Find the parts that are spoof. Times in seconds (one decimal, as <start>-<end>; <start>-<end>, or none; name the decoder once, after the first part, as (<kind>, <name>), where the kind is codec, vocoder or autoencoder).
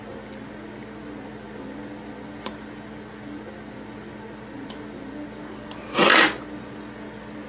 none